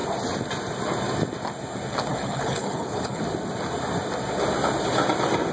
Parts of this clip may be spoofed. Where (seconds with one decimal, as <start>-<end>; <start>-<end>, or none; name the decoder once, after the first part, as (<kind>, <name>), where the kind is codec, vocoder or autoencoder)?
2.1-3.2 (codec, HILCodec)